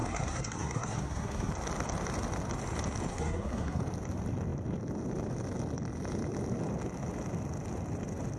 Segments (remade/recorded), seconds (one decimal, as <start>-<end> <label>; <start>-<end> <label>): 0.0-1.5 remade; 1.5-3.1 recorded; 3.1-3.8 remade; 3.8-8.4 recorded